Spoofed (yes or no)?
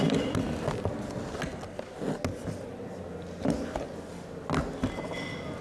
no